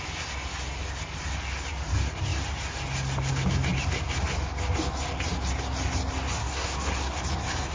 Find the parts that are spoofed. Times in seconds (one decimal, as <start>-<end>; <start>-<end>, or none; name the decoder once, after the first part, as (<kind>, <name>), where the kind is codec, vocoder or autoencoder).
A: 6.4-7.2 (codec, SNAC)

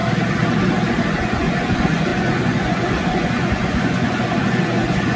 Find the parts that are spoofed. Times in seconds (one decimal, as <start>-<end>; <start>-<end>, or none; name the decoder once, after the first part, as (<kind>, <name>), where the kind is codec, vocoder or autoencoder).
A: 1.2-5.2 (vocoder, Vocos)

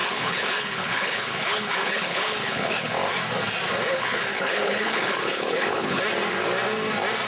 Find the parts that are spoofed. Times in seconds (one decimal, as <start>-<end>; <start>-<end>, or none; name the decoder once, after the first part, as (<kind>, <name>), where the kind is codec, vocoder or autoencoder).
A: 0.0-2.9 (codec, HILCodec); 3.9-6.0

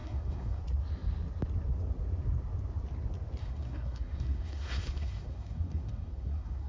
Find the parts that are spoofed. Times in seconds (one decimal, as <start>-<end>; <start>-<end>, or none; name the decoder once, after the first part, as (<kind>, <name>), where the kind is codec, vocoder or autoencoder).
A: 0.0-0.6 (codec, SNAC); 3.4-6.7

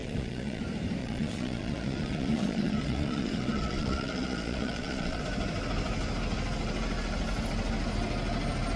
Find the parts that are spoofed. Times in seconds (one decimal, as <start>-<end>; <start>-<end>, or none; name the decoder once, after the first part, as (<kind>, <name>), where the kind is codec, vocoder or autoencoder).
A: 0.0-0.6 (vocoder, Vocos); 1.0-5.2

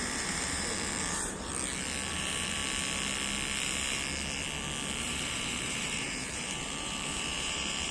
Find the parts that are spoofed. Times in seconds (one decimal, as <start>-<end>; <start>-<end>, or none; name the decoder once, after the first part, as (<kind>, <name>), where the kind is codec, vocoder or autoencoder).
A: 0.0-1.5 (vocoder, BigVGAN v2); 2.1-2.6; 5.0-7.9

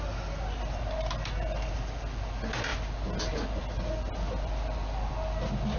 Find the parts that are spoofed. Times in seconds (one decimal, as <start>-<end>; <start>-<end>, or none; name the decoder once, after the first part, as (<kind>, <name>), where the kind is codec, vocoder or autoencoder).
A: none

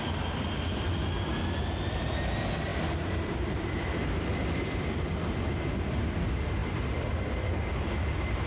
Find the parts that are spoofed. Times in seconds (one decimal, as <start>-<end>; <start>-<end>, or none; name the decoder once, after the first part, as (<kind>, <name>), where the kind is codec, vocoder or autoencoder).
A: none